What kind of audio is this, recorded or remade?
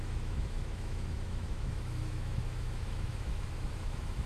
remade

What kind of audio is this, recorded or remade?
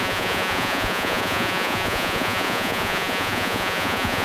remade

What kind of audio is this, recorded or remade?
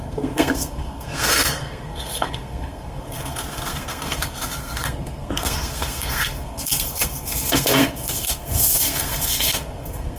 remade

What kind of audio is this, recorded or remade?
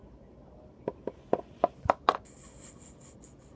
recorded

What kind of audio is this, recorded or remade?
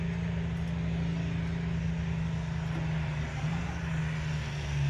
recorded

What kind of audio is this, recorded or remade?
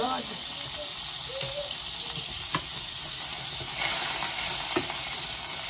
remade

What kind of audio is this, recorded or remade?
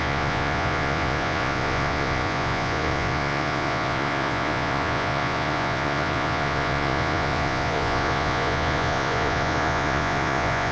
remade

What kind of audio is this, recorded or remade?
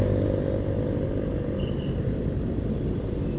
recorded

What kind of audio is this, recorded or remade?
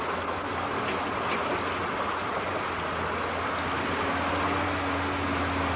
recorded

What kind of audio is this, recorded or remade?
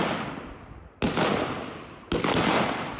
recorded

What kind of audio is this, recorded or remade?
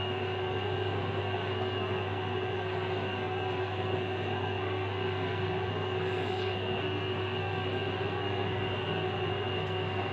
remade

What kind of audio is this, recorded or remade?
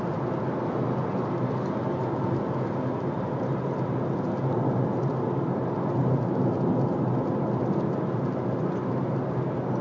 recorded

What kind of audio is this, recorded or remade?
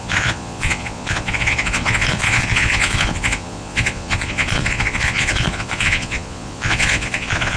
remade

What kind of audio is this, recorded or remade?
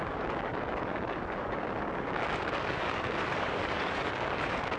remade